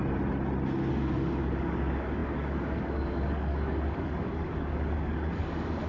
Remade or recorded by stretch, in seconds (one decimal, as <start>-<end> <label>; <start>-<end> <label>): 0.0-0.9 recorded; 0.9-5.9 remade